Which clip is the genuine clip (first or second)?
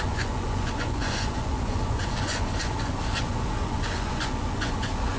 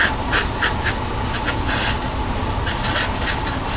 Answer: second